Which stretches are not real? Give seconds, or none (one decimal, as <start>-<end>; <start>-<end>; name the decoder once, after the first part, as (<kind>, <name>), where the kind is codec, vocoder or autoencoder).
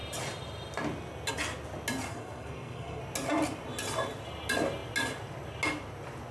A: 2.1-3.0 (codec, SNAC)